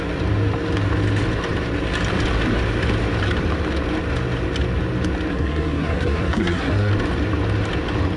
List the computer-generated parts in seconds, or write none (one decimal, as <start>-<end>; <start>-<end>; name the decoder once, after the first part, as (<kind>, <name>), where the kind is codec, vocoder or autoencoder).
5.3-6.9 (codec, SNAC)